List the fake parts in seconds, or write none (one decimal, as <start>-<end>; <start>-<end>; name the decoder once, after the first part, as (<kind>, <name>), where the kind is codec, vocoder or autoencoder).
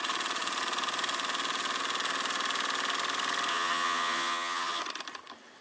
3.5-4.8 (vocoder, HiFi-GAN)